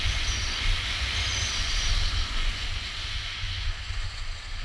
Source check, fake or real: fake